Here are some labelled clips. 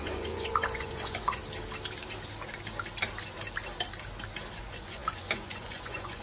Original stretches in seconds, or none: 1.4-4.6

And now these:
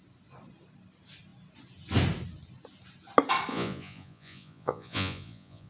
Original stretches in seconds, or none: 0.0-3.5